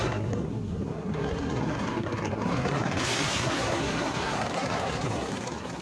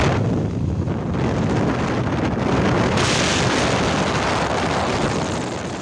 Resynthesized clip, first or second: first